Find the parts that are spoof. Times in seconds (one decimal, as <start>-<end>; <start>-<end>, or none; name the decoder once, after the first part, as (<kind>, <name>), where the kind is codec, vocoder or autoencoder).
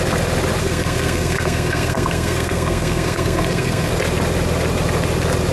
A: 0.6-3.9 (codec, SNAC)